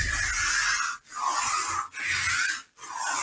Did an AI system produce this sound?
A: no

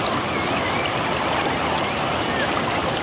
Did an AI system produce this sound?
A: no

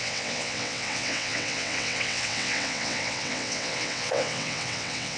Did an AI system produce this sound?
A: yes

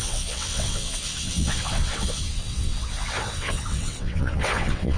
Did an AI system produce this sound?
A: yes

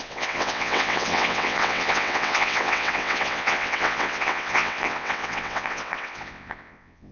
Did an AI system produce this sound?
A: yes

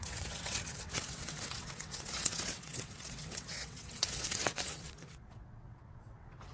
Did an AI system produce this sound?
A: yes